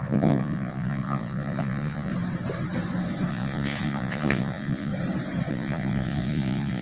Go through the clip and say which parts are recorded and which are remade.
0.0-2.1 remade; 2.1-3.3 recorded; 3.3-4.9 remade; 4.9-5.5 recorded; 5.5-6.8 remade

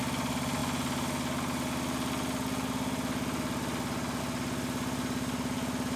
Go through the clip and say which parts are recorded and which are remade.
0.0-6.0 recorded

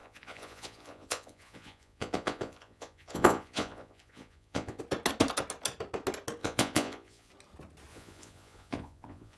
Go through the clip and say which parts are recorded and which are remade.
0.0-4.8 remade; 4.8-6.4 recorded; 6.4-7.3 remade; 7.3-7.9 recorded; 7.9-9.4 remade

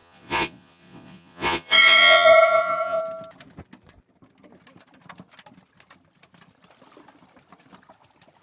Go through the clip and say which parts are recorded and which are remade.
0.0-3.0 remade; 3.0-8.4 recorded

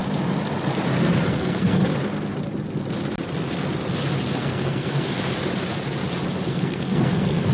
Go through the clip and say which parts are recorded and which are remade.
0.0-1.3 recorded; 1.3-1.8 remade; 1.8-4.4 recorded; 4.4-5.1 remade; 5.1-6.5 recorded; 6.5-7.5 remade

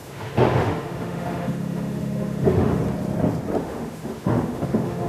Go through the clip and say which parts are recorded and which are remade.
0.0-2.8 remade; 2.8-3.6 recorded; 3.6-5.1 remade